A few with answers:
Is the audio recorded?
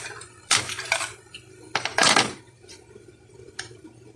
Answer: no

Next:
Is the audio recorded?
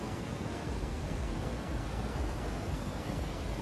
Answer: no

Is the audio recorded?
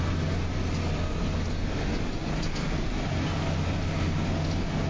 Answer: yes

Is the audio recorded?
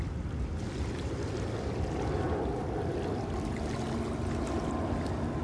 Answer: yes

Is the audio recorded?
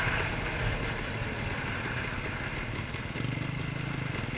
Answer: yes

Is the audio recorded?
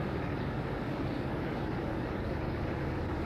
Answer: no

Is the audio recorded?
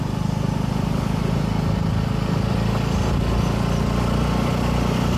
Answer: yes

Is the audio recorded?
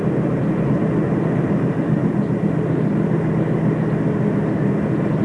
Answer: yes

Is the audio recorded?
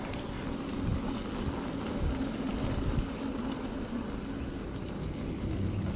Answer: yes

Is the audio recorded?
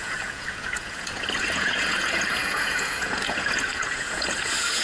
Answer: no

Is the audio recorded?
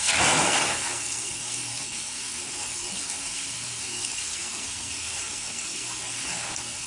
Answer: no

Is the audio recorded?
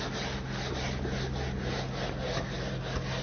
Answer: yes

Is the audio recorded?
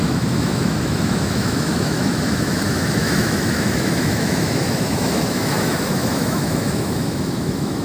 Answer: no